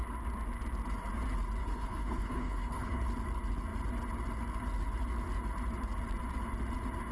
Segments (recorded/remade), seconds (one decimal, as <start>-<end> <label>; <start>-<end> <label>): 0.0-1.6 recorded; 1.6-3.0 remade; 3.0-7.1 recorded